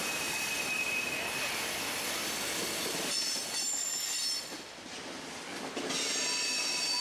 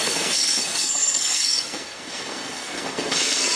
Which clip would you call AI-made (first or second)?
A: second